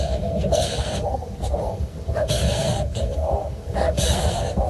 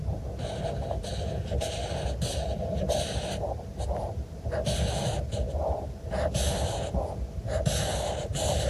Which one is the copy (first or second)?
first